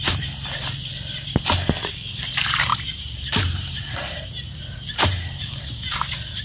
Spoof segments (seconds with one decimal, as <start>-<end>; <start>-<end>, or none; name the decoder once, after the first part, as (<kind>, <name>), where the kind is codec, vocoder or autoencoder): 0.0-0.9 (vocoder, BigVGAN v2); 1.9-6.4